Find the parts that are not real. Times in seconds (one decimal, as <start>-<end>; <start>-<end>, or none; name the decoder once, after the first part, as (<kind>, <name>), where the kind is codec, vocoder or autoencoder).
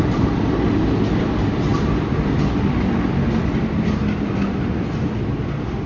none